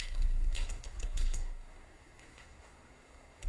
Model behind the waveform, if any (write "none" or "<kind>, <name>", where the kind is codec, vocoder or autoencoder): codec, SNAC